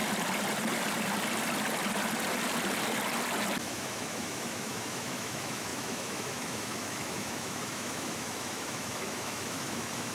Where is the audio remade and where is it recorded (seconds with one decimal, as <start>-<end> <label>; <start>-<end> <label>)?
0.0-3.6 recorded; 3.6-10.1 remade